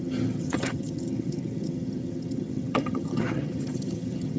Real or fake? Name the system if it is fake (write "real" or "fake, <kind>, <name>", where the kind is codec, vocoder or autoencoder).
fake, vocoder, HiFi-GAN